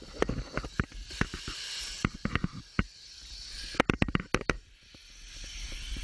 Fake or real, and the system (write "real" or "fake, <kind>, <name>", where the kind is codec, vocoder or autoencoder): real